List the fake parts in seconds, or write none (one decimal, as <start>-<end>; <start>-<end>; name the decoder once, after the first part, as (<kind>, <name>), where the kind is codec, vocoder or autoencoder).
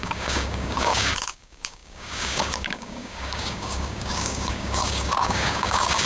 0.0-6.1 (codec, DAC)